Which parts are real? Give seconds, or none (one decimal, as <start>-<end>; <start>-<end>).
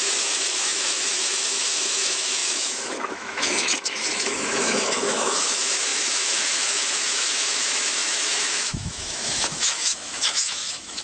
none